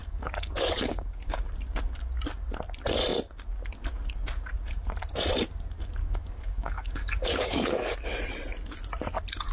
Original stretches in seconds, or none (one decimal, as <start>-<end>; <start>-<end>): 1.4-6.0; 7.9-9.5